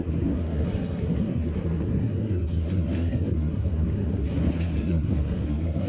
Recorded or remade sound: remade